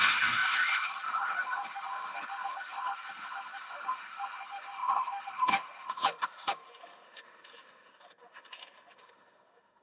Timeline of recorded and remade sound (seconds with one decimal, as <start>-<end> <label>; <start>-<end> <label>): 0.0-9.8 remade